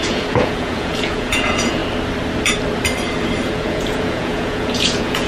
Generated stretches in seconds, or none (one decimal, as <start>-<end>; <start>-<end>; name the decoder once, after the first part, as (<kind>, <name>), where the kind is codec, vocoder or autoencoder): 0.0-1.8 (vocoder, Vocos); 3.4-5.3